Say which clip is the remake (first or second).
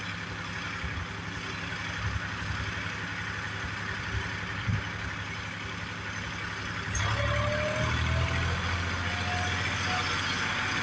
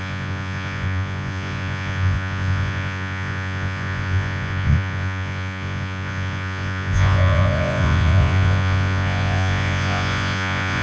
second